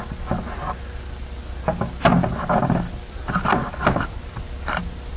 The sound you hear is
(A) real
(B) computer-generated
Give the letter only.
A